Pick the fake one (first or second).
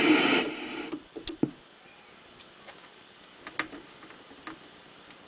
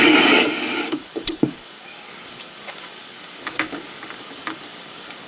second